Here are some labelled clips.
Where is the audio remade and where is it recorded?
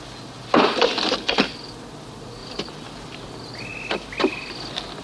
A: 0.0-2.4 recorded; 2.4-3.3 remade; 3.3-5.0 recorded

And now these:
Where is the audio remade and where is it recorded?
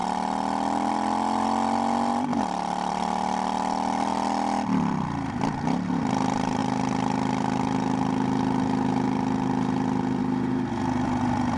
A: 0.0-0.9 recorded; 0.9-6.6 remade; 6.6-10.2 recorded; 10.2-11.6 remade